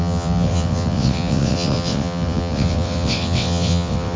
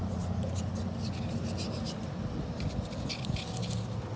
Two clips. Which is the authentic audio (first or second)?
second